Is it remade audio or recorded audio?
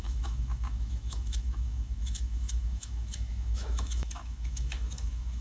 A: remade